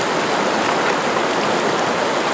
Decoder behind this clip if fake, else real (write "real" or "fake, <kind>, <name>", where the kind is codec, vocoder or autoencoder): real